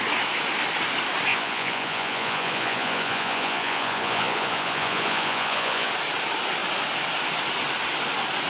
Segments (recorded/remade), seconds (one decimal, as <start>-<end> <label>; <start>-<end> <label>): 0.0-1.3 recorded; 1.3-5.9 remade; 5.9-8.5 recorded